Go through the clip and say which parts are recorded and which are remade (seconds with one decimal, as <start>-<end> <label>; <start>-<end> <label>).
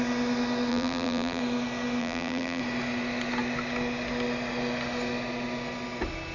0.0-0.7 recorded; 0.7-1.4 remade; 1.4-2.0 recorded; 2.0-2.6 remade; 2.6-6.3 recorded